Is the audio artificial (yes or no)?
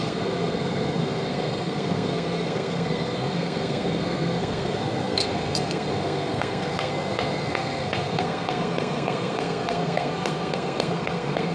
yes